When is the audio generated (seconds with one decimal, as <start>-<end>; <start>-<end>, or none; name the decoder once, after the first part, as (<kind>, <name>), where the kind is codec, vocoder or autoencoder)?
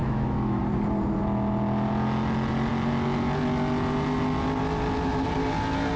0.0-0.6 (autoencoder, DAC-VAE)